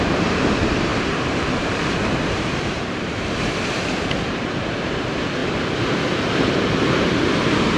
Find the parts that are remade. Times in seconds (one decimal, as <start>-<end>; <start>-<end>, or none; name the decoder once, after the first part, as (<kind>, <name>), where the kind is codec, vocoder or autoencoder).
0.0-5.4 (vocoder, BigVGAN v2)